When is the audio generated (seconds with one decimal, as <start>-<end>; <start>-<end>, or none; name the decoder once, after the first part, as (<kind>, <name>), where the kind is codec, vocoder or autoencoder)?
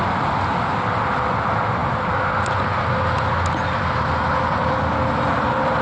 none